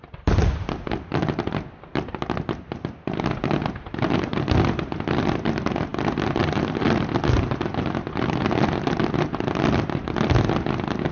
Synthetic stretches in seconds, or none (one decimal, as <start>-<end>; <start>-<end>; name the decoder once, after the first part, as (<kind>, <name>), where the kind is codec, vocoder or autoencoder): none